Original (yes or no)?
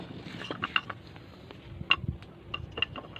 yes